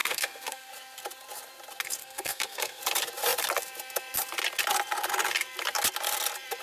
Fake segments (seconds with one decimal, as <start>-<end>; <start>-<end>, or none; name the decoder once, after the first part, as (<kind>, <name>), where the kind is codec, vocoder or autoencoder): 0.0-0.7 (codec, SNAC); 2.0-2.8